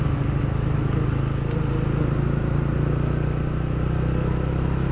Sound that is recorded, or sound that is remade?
recorded